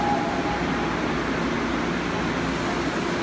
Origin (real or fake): real